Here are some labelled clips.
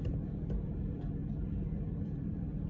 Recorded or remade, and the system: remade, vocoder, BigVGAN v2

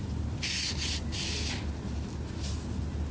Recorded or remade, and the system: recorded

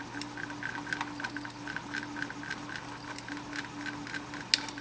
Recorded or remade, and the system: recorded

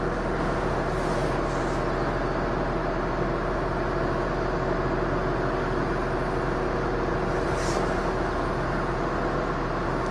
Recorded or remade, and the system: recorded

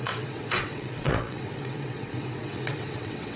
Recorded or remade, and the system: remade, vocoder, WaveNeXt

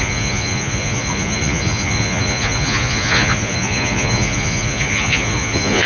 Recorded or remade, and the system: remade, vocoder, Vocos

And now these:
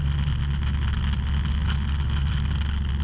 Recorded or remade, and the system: recorded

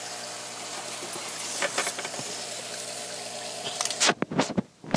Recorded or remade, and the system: recorded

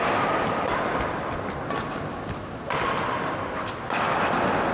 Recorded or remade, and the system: recorded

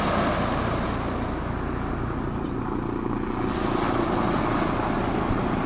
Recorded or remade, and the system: recorded